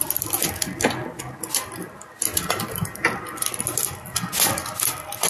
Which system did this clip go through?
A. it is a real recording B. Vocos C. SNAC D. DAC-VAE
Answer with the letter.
A